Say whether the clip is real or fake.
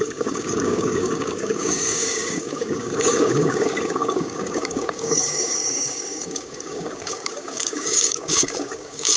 fake